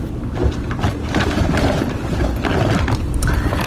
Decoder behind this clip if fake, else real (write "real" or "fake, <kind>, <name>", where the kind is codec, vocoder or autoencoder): fake, vocoder, BigVGAN v2